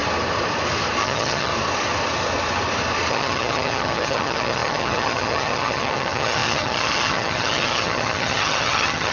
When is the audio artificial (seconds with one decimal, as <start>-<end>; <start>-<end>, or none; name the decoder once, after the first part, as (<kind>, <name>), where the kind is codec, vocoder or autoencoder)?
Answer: 1.0-1.5 (vocoder, HiFi-GAN); 3.1-9.1